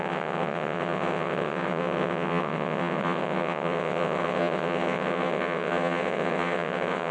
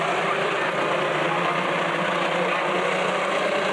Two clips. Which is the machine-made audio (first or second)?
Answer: first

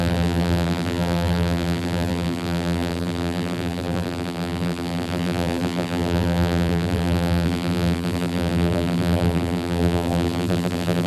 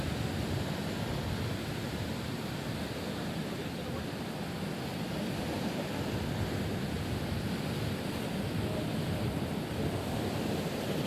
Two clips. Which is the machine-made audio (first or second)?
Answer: first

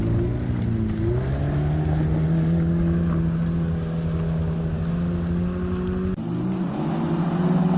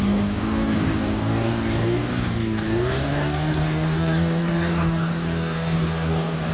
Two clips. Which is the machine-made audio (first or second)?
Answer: second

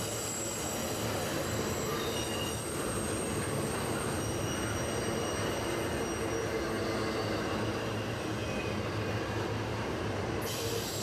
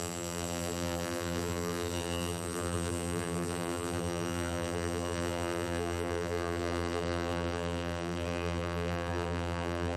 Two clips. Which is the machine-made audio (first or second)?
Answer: second